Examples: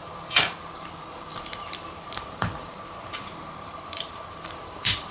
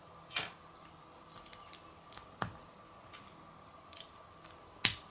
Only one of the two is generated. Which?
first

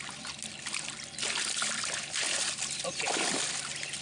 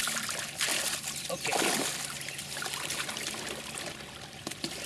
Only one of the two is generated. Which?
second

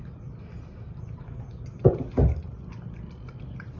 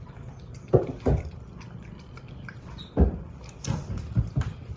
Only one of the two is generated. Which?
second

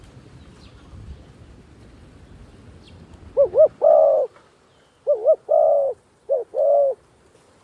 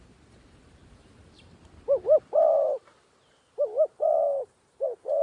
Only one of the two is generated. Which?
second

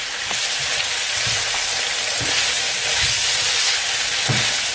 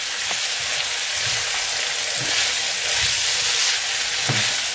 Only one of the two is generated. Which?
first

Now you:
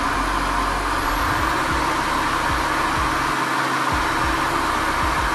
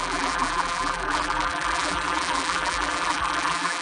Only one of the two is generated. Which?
second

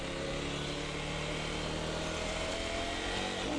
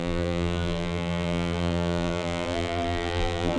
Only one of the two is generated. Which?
second